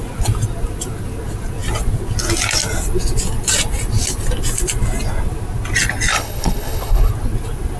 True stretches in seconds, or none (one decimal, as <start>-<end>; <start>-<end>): 0.0-6.1; 7.1-7.8